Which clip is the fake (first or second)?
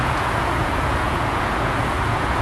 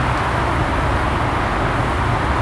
first